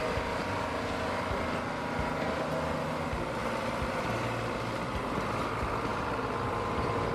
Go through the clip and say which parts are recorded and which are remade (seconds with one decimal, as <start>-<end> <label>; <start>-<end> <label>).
0.0-3.4 recorded; 3.4-5.5 remade; 5.5-5.9 recorded; 5.9-7.1 remade